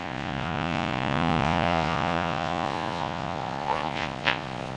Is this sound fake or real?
fake